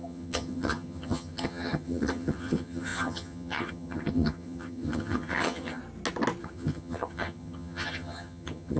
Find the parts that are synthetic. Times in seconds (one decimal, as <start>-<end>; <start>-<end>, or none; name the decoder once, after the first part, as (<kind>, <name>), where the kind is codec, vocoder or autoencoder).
0.0-5.8 (vocoder, HiFi-GAN); 6.4-8.8